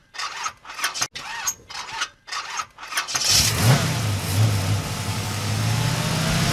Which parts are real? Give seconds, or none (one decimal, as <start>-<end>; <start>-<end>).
0.0-5.1; 5.9-6.5